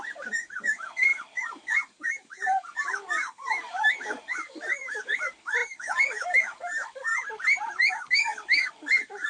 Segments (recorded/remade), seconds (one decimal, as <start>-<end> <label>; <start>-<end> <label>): 0.0-7.1 remade; 7.1-7.9 recorded; 7.9-9.3 remade